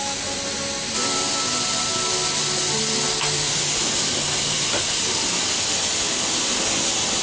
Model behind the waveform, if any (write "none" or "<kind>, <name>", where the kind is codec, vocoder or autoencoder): none